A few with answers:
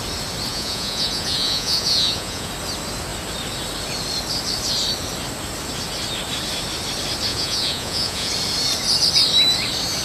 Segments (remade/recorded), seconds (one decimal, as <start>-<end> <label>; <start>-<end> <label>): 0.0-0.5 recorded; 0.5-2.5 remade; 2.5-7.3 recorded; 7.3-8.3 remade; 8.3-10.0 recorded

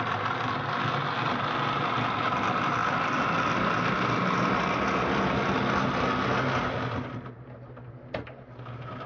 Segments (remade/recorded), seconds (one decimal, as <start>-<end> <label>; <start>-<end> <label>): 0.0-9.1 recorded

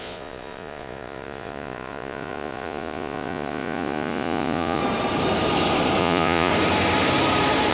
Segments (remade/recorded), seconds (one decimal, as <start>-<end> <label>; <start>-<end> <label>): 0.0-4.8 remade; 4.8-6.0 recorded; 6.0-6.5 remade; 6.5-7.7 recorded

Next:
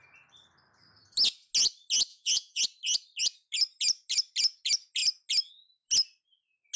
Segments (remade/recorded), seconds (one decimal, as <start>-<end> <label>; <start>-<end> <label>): 0.0-2.1 recorded; 2.1-2.6 remade; 2.6-6.8 recorded

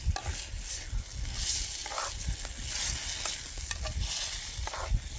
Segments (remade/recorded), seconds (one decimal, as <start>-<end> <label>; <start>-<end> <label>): 0.0-5.2 recorded

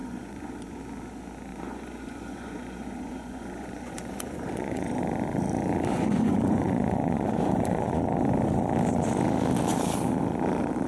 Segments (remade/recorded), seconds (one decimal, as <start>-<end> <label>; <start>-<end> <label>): 0.0-0.8 remade; 0.8-1.5 recorded; 1.5-5.0 remade; 5.0-5.9 recorded; 5.9-8.0 remade; 8.0-10.9 recorded

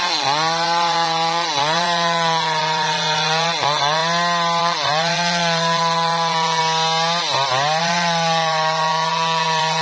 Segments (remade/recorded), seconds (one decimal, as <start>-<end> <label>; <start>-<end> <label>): 0.0-4.0 remade; 4.0-4.6 recorded; 4.6-6.6 remade; 6.6-7.8 recorded; 7.8-9.8 remade

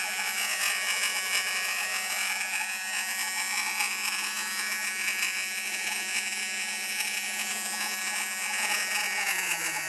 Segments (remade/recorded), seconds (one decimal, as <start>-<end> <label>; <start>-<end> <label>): 0.0-9.9 remade